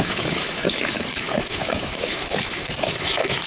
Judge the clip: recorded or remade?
remade